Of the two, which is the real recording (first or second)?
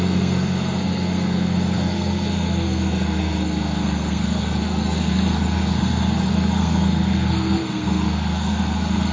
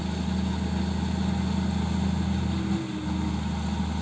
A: second